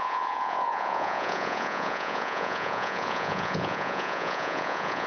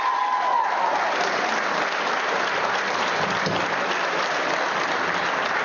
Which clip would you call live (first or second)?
second